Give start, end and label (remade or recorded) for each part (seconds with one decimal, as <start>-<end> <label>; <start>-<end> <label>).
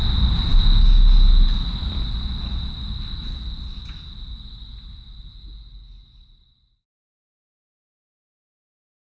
0.0-9.1 recorded